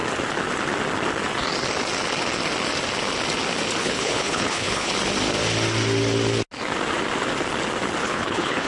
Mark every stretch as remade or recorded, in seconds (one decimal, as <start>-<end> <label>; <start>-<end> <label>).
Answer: 0.0-3.8 recorded; 3.8-4.9 remade; 4.9-8.0 recorded; 8.0-8.7 remade